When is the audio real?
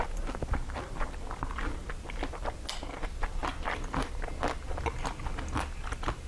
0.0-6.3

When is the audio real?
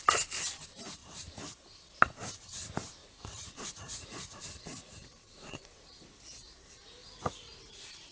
0.0-3.0; 6.1-7.0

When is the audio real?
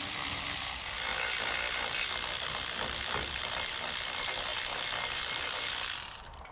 1.1-3.4; 4.5-5.3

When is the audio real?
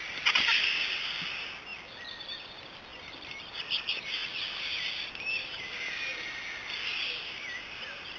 0.0-1.7; 2.5-2.9; 3.5-8.2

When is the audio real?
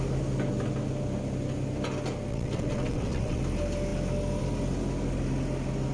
0.0-2.3; 3.4-5.9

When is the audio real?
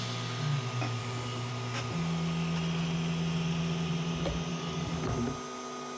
0.0-1.0; 1.5-4.5; 5.0-6.0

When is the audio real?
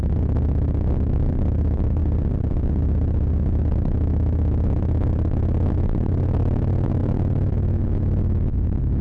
2.0-3.7